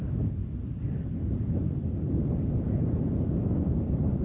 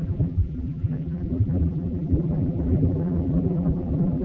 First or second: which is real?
first